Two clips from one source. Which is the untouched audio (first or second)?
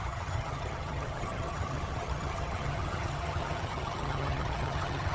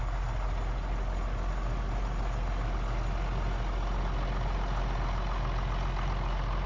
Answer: second